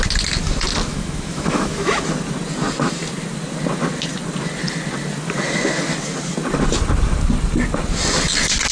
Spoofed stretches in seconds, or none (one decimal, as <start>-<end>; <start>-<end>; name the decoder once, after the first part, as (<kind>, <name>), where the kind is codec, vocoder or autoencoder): 0.9-2.0 (autoencoder, DAC-VAE)